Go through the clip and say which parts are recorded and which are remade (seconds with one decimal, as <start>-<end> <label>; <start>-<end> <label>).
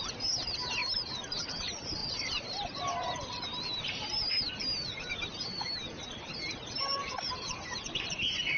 0.0-0.8 recorded; 0.8-1.4 remade; 1.4-2.0 recorded; 2.0-7.1 remade; 7.1-8.6 recorded